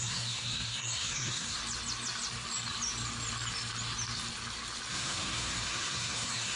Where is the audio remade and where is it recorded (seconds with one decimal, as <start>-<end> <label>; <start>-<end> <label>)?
0.0-1.6 remade; 1.6-4.9 recorded; 4.9-6.6 remade